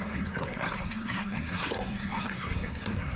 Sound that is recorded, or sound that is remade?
remade